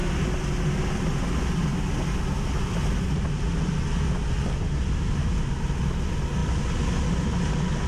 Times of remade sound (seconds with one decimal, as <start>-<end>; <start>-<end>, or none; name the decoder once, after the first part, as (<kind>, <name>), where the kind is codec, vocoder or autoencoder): none